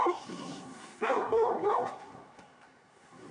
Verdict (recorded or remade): remade